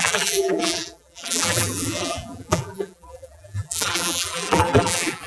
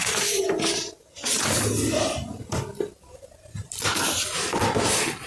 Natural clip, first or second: second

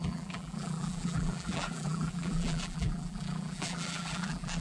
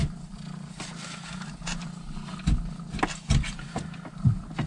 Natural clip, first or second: second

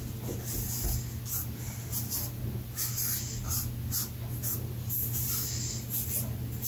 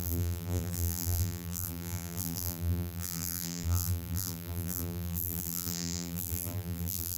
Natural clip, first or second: first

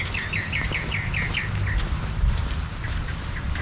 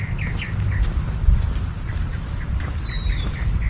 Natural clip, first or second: first